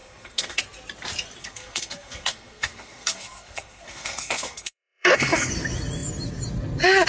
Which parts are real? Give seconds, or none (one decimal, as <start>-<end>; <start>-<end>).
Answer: 0.6-1.4; 5.5-7.1